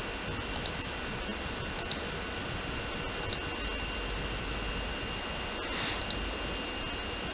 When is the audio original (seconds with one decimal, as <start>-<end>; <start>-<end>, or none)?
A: 0.0-7.3